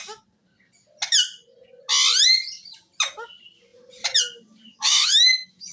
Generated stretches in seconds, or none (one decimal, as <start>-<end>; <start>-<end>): 4.7-5.7